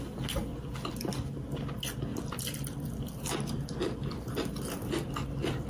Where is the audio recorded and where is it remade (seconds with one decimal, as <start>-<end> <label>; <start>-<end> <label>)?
0.0-2.1 recorded; 2.1-5.7 remade